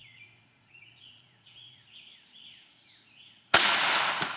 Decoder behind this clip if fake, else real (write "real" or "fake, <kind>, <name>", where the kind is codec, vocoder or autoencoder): fake, vocoder, Vocos